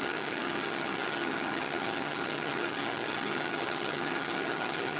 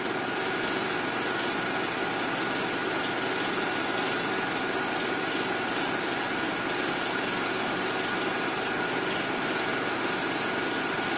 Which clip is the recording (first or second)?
second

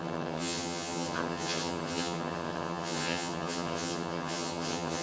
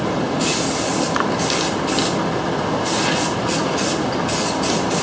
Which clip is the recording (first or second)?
second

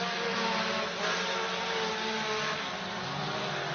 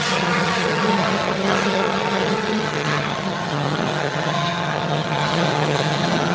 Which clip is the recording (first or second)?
first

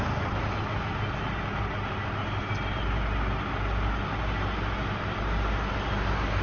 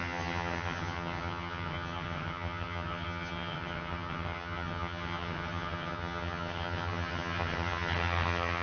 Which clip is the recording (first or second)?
first